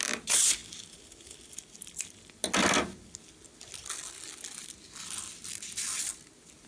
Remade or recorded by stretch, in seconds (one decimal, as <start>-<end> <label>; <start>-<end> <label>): 0.0-6.7 recorded